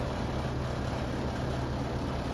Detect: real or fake fake